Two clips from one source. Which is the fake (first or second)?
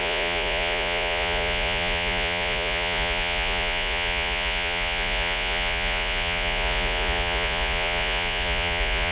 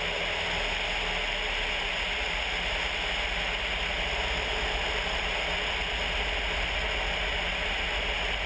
first